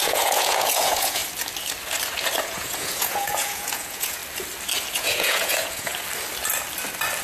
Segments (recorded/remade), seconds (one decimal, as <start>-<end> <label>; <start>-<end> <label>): 0.0-1.2 remade; 1.2-2.4 recorded; 2.4-4.2 remade; 4.2-4.9 recorded; 4.9-5.9 remade; 5.9-7.2 recorded